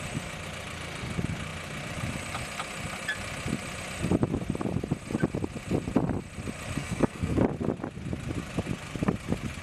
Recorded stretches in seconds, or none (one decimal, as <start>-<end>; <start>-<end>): 0.0-6.8; 7.4-9.6